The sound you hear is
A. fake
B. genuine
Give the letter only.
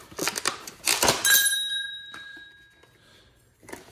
B